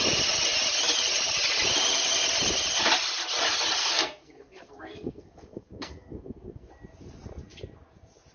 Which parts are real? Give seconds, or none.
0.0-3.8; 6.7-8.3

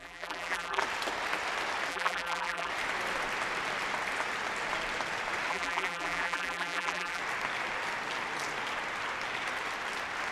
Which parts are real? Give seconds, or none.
0.8-1.9; 2.7-5.5; 7.2-10.3

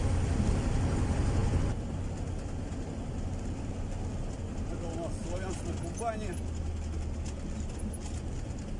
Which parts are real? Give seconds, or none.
0.0-8.8

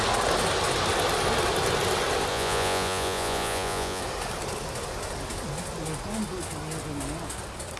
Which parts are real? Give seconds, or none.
0.0-2.3; 4.0-7.8

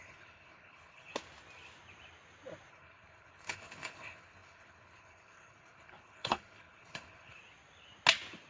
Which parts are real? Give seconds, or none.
1.1-2.7; 7.4-8.5